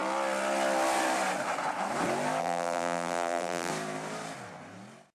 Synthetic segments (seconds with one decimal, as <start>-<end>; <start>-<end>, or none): 2.4-3.7